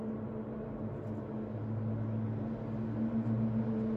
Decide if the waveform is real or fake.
real